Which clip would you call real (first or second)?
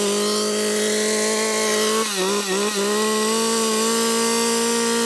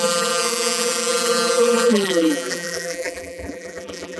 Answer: first